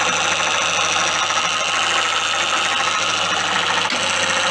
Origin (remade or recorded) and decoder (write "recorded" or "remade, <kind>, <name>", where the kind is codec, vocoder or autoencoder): recorded